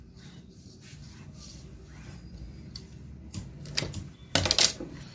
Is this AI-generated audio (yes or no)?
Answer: no